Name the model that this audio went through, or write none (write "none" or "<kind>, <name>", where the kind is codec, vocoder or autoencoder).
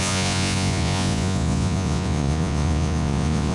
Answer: vocoder, Vocos